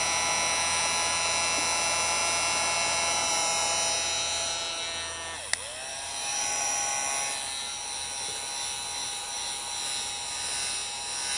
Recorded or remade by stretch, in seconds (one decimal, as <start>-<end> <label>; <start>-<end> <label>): 0.0-5.9 recorded; 5.9-6.9 remade; 6.9-9.0 recorded; 9.0-9.5 remade; 9.5-11.4 recorded